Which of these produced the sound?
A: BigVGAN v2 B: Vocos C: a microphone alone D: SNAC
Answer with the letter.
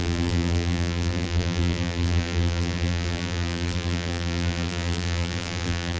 A